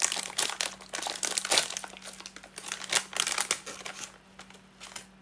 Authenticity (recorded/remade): recorded